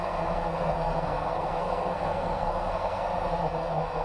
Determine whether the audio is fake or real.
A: fake